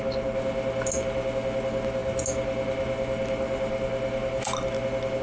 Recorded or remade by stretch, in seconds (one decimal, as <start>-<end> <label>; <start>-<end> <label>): 0.0-5.2 recorded